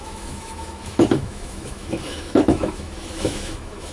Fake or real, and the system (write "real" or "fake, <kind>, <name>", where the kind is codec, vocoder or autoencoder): fake, autoencoder, DAC-VAE